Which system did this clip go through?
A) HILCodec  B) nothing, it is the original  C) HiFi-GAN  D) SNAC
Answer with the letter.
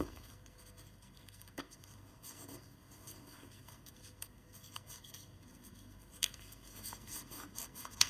D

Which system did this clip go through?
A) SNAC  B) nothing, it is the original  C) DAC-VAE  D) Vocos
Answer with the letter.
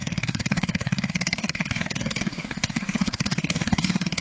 A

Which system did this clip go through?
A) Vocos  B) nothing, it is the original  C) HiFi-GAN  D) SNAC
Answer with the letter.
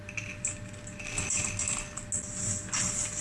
B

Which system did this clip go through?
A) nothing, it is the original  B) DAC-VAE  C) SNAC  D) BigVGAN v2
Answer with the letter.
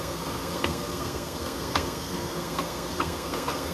C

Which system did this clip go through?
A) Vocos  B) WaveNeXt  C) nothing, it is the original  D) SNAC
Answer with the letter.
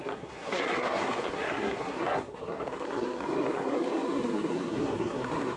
D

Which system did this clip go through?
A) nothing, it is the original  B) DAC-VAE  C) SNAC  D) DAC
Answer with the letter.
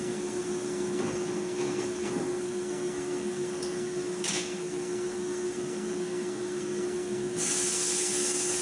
C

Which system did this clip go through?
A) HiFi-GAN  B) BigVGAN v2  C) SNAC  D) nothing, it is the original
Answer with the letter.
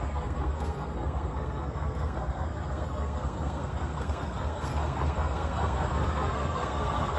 C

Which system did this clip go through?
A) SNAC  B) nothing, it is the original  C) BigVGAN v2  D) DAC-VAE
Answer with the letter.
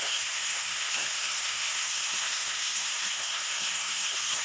A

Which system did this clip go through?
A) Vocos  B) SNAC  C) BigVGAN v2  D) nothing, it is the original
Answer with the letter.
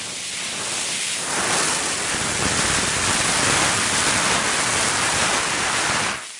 D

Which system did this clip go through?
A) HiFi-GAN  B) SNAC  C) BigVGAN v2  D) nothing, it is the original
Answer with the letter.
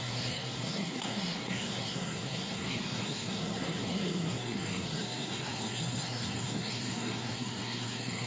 B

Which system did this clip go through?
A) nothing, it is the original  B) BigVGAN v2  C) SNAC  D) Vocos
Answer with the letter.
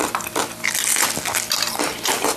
A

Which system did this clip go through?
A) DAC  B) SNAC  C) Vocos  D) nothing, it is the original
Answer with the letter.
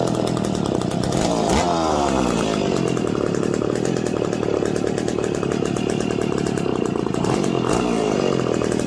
D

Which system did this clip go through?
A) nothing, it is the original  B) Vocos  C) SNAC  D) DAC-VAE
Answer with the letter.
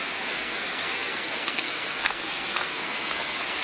C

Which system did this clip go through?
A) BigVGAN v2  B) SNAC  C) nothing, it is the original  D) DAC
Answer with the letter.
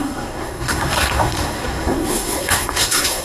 B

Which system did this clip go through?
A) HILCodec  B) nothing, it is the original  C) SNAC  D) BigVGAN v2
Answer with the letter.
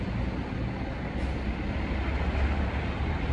B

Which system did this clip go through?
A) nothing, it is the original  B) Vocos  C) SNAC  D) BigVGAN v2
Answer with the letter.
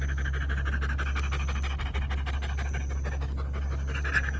A